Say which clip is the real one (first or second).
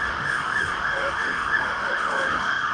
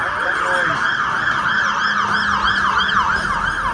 second